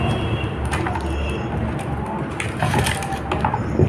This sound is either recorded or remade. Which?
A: recorded